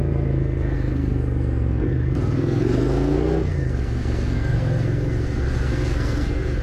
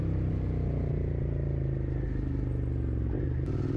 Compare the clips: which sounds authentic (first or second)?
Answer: second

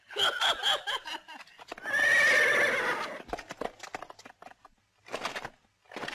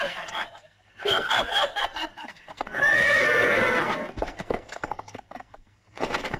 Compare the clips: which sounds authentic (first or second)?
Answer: first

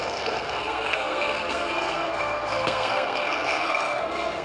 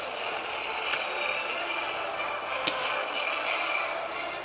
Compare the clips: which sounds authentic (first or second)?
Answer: second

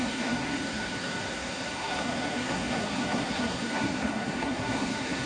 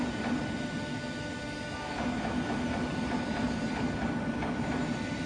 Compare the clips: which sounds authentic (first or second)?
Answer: second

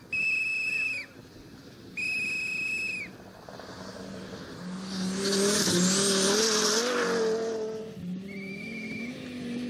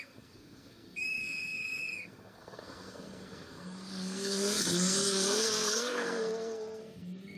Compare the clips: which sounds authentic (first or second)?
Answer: first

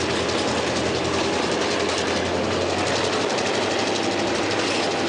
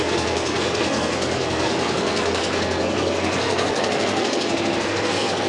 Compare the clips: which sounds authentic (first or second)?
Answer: first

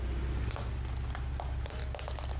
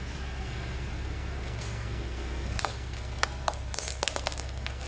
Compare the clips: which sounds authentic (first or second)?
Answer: first